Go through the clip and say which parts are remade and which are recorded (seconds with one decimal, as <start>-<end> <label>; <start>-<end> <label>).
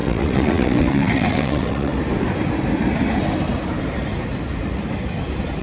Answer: 0.0-1.9 remade; 1.9-5.6 recorded